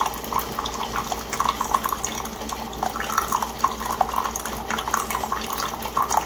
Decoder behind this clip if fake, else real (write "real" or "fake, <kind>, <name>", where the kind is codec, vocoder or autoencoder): real